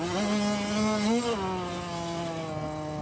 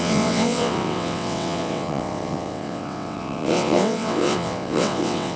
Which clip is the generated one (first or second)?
second